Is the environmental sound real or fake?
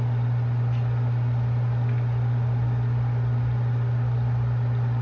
real